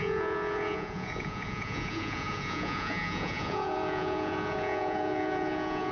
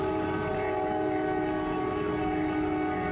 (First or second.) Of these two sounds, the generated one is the first